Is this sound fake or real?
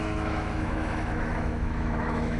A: fake